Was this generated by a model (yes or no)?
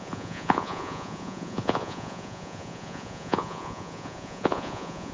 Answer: yes